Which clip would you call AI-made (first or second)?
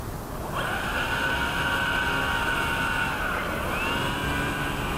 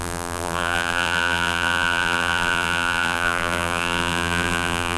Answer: second